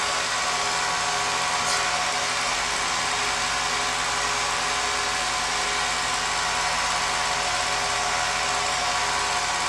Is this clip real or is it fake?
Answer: real